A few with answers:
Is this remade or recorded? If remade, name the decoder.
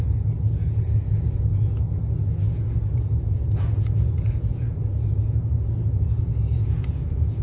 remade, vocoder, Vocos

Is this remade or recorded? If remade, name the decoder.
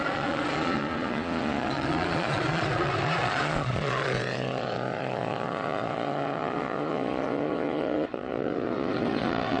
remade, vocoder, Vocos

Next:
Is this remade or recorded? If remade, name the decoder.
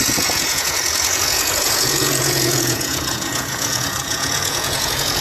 remade, vocoder, Vocos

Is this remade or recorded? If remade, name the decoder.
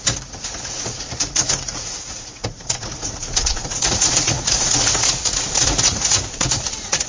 remade, vocoder, Vocos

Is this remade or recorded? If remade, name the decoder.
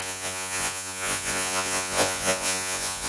remade, vocoder, Vocos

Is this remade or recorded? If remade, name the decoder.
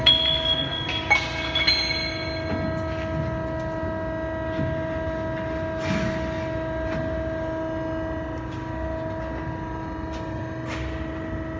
recorded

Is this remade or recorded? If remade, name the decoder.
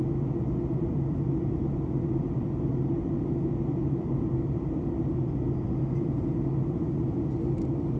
recorded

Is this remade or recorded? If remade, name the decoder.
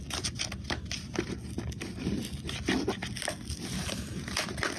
recorded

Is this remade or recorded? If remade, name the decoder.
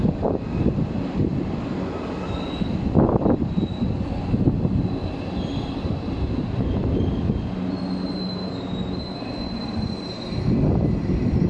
recorded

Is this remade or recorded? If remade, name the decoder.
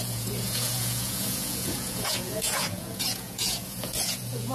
remade, vocoder, Vocos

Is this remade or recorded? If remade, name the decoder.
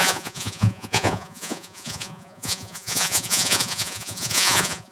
remade, vocoder, Vocos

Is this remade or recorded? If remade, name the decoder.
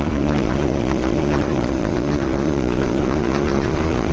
remade, vocoder, Vocos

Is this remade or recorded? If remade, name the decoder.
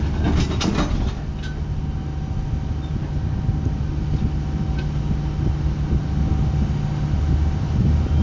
recorded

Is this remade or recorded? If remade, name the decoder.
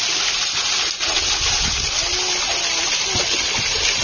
recorded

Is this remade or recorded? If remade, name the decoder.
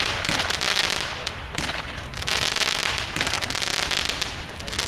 recorded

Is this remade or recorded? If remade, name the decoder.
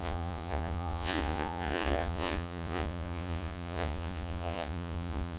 remade, vocoder, Vocos